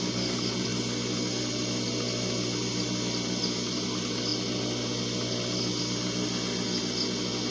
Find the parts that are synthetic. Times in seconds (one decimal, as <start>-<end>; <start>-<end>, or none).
none

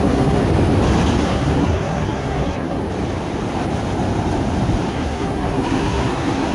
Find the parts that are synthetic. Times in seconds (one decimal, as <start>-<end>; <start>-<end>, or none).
0.0-0.4; 1.2-2.8; 4.9-6.5